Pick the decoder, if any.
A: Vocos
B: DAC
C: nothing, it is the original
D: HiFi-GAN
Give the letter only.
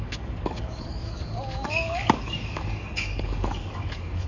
B